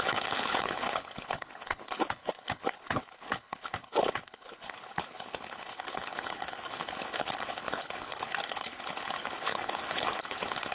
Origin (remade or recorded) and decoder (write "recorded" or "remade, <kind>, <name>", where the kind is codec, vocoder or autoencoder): remade, codec, HILCodec